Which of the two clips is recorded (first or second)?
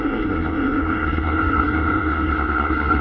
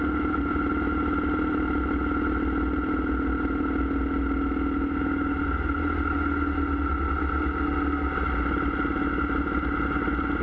second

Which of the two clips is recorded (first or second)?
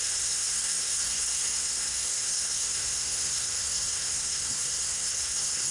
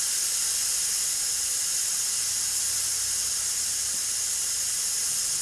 second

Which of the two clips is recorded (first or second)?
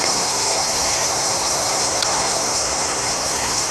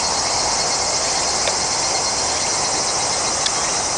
second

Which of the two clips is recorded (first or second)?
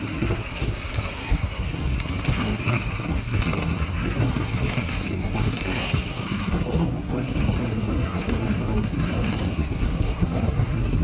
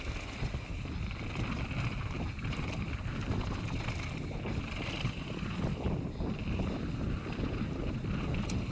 second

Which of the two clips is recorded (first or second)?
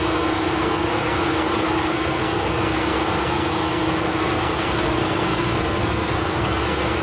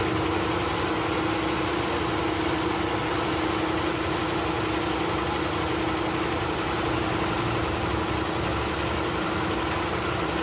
second